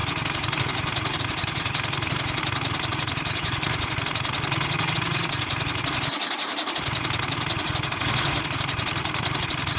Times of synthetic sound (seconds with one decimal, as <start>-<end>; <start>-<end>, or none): none